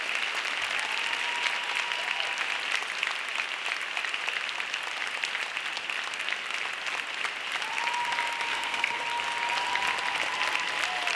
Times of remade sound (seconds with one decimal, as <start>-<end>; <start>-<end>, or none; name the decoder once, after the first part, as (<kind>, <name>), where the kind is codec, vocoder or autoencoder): 8.5-9.0 (codec, SNAC)